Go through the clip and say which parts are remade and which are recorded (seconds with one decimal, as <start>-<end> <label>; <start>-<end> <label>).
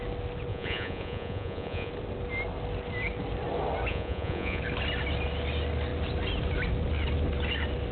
0.0-0.5 recorded; 0.5-1.9 remade; 1.9-3.9 recorded; 3.9-4.6 remade; 4.6-7.9 recorded